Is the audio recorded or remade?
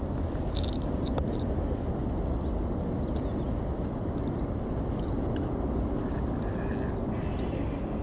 recorded